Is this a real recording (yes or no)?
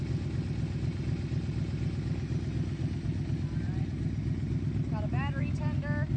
yes